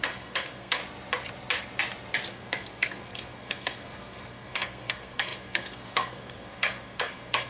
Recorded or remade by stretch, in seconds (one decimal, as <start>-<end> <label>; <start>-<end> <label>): 0.0-0.8 remade; 0.8-2.3 recorded; 2.3-7.5 remade